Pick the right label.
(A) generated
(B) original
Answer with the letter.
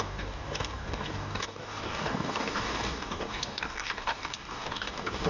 A